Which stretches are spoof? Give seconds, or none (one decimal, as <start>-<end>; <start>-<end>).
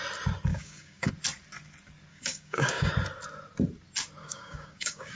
0.5-1.1; 2.1-2.9; 4.2-5.1